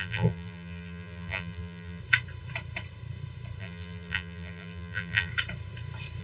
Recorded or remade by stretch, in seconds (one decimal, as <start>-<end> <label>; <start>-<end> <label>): 0.0-2.0 remade; 2.0-3.6 recorded; 3.6-5.3 remade; 5.3-6.2 recorded